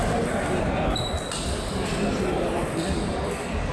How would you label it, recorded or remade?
recorded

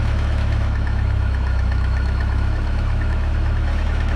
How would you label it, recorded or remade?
remade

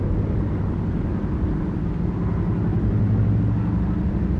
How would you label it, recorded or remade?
recorded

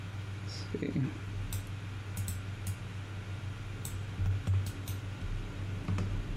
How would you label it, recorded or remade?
recorded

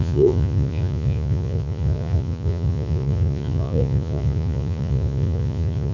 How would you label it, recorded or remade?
remade